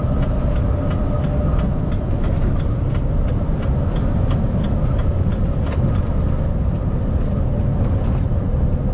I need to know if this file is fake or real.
real